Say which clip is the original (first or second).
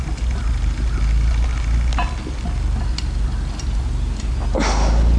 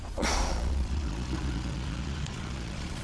first